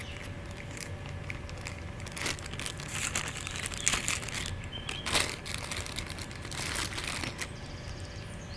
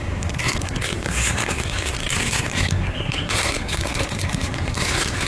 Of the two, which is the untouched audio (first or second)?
first